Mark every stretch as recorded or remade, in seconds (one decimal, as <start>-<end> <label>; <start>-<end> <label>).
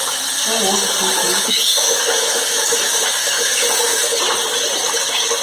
0.0-1.2 recorded; 1.2-4.2 remade; 4.2-5.4 recorded